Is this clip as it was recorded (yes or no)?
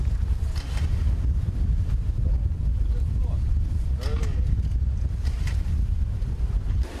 no